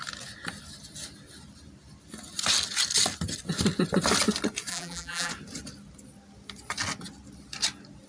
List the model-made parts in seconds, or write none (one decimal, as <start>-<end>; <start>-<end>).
4.7-5.3